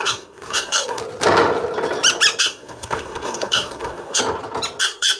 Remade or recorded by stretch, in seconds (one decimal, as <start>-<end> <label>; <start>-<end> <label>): 0.0-1.0 remade; 1.0-2.4 recorded; 2.4-4.2 remade; 4.2-4.8 recorded; 4.8-5.2 remade

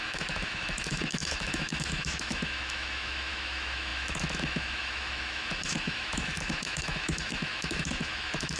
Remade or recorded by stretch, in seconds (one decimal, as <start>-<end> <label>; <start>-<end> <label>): 0.0-8.6 remade

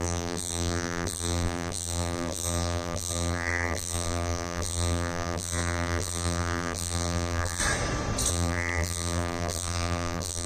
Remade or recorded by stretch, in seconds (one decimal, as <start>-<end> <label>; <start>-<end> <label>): 0.0-7.6 remade; 7.6-8.3 recorded; 8.3-10.5 remade